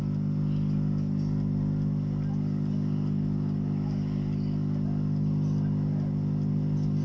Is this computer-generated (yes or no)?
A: no